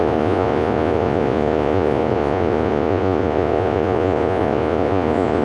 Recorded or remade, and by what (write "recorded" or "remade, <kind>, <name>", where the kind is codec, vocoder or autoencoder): remade, vocoder, Vocos